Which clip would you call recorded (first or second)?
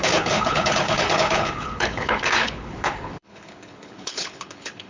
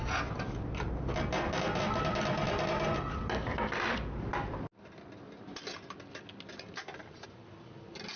second